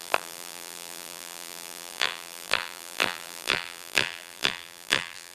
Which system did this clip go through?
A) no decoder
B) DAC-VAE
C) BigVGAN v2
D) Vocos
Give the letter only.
C